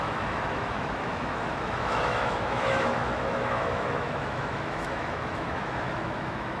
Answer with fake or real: fake